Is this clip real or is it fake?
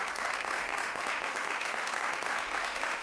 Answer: fake